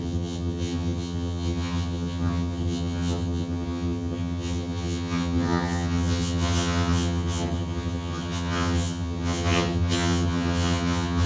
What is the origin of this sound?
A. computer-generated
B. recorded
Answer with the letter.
A